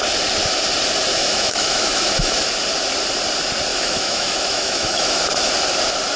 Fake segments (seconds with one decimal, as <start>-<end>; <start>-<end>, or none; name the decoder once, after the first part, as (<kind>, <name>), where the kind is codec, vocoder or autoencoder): 1.1-2.5 (autoencoder, DAC-VAE); 3.7-5.5